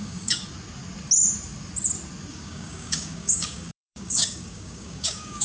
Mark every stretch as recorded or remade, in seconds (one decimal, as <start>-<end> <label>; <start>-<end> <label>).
0.0-0.4 remade; 0.4-2.3 recorded; 2.3-5.4 remade